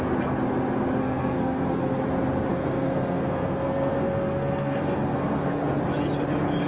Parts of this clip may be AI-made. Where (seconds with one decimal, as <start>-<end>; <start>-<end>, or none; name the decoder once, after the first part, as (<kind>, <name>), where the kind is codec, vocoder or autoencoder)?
1.0-2.0 (codec, SNAC); 2.5-5.8